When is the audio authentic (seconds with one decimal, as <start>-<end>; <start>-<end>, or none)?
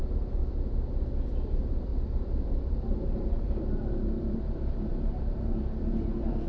0.4-1.5; 1.9-2.6